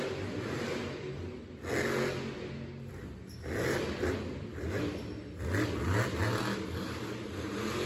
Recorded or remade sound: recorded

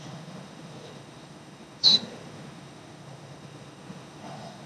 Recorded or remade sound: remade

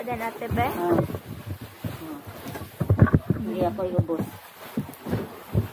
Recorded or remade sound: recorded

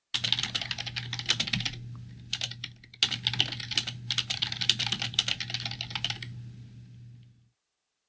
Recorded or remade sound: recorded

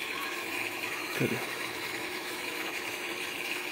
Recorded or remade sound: remade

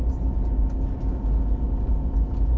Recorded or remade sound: recorded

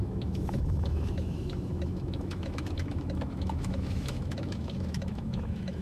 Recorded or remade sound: remade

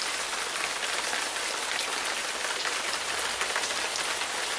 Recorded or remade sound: recorded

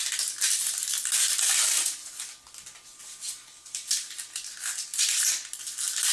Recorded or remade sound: recorded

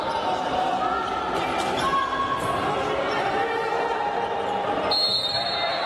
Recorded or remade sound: recorded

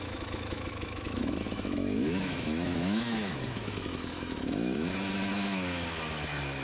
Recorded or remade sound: remade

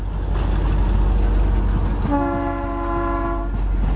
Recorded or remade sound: recorded